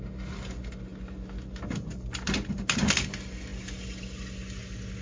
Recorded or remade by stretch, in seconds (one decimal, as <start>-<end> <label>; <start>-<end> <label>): 0.0-5.0 recorded

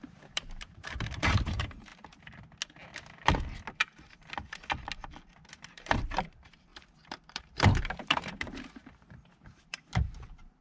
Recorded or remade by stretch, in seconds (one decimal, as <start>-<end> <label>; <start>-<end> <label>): 0.0-1.9 remade; 1.9-5.5 recorded; 5.5-6.7 remade; 6.7-7.3 recorded; 7.3-10.6 remade

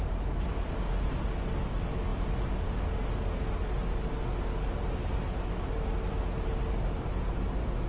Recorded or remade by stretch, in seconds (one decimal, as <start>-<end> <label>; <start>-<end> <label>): 0.0-7.9 recorded